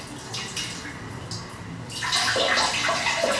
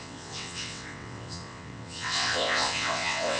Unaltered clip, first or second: first